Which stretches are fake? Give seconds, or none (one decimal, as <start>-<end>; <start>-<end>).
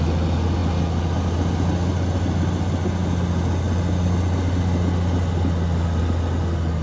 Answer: none